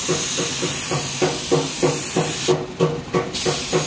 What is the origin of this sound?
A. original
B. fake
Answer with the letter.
A